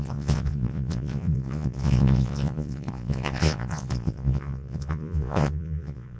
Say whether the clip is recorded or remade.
remade